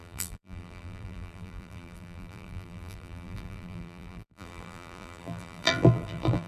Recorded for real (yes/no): no